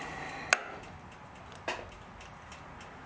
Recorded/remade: recorded